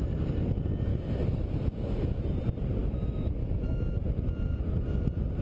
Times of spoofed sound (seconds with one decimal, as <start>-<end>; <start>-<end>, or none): 0.9-2.2; 2.8-3.8